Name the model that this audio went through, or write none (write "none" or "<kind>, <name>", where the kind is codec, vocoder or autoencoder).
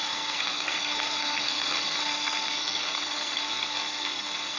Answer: codec, SNAC